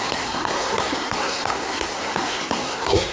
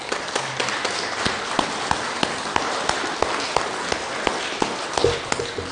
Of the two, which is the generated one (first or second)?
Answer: first